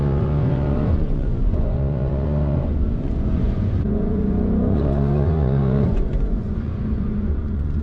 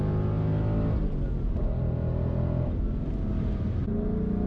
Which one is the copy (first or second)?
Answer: first